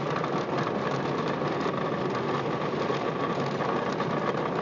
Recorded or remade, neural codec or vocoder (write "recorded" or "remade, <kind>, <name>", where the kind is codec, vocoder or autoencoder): recorded